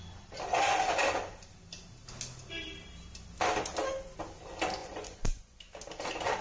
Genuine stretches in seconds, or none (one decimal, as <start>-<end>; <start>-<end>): 0.0-4.8; 5.6-6.4